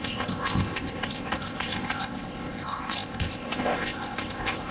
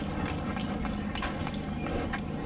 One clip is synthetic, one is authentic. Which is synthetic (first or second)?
first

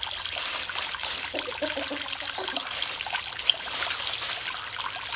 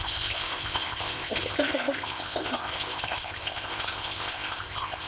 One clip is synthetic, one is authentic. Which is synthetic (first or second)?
second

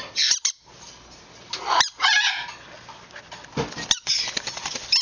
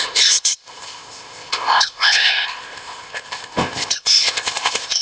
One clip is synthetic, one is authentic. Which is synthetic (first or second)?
second